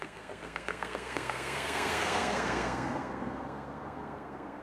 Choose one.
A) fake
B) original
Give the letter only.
A